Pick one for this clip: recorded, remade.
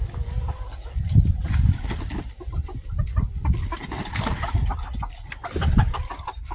remade